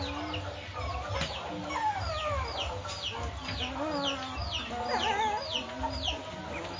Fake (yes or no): no